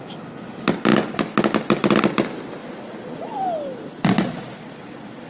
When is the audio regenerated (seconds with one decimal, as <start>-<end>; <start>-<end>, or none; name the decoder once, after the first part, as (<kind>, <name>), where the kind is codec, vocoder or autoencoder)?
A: 2.6-3.4 (vocoder, Vocos); 3.9-5.3